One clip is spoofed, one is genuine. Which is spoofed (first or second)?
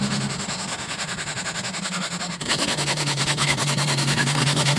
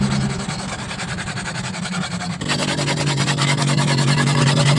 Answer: first